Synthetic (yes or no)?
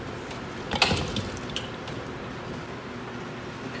no